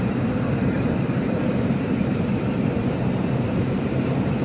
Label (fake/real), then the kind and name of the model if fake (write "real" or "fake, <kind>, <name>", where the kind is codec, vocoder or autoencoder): fake, vocoder, BigVGAN v2